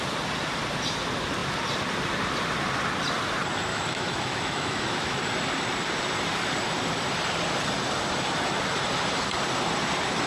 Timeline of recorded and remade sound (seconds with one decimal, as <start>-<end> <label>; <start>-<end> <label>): 0.0-3.7 recorded; 3.7-5.2 remade; 5.2-10.3 recorded